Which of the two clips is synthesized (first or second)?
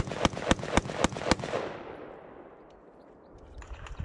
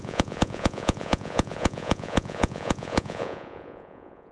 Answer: second